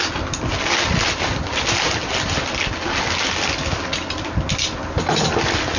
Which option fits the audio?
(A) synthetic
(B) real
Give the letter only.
B